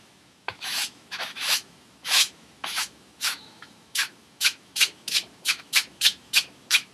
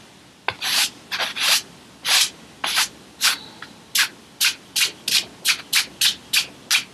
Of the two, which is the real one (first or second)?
second